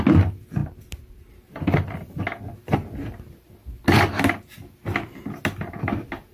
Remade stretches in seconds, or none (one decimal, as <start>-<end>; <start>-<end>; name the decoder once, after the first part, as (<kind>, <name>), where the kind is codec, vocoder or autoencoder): none